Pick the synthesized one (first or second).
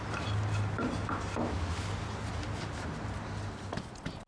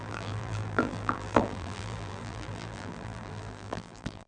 second